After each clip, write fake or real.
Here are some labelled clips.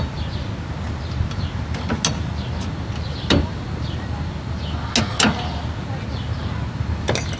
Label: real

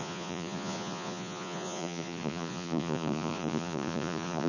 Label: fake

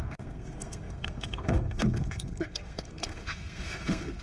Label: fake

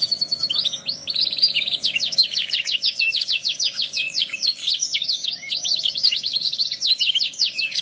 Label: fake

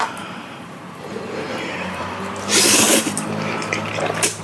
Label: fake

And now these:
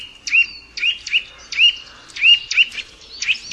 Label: real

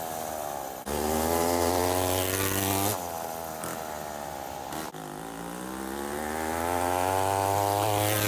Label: real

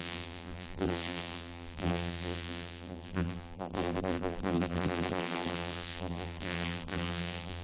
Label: fake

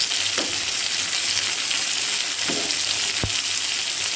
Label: real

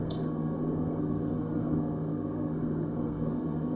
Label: fake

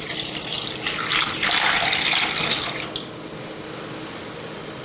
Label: real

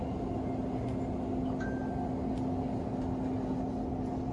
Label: real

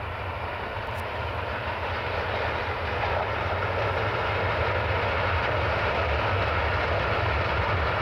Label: real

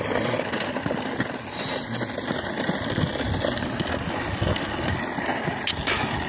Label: real